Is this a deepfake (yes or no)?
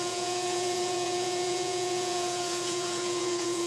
yes